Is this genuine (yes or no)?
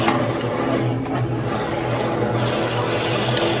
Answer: yes